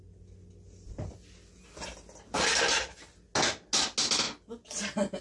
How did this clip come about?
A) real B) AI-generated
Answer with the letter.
A